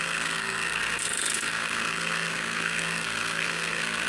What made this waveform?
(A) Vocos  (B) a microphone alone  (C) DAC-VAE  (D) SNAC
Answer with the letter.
D